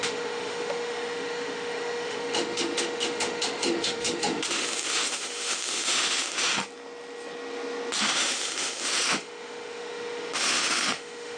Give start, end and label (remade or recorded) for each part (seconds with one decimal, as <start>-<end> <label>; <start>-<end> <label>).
0.0-6.5 remade; 6.5-8.0 recorded; 8.0-11.4 remade

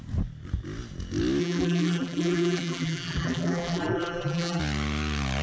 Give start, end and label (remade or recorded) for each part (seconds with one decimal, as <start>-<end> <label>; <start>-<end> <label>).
0.0-1.4 recorded; 1.4-4.6 remade; 4.6-5.4 recorded

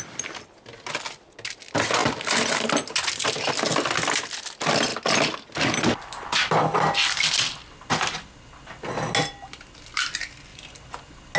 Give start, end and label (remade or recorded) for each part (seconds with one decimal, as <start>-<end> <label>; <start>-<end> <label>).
0.0-11.4 recorded

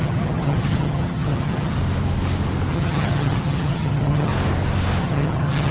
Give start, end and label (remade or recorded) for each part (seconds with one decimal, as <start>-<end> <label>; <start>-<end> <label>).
0.0-1.8 remade; 1.8-2.7 recorded; 2.7-4.3 remade; 4.3-5.0 recorded; 5.0-5.7 remade

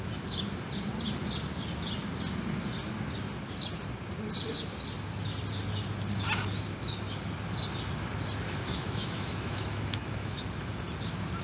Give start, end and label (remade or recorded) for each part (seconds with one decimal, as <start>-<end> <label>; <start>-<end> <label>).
0.0-8.7 recorded; 8.7-10.4 remade; 10.4-11.4 recorded

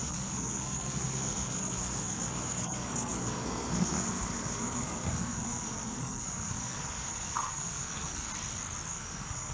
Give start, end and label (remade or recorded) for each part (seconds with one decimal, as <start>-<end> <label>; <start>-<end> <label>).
0.0-8.3 remade; 8.3-8.9 recorded; 8.9-9.5 remade